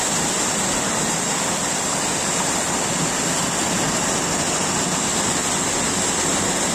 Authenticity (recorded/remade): recorded